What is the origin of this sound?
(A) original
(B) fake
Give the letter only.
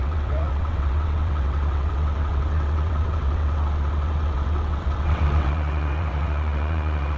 B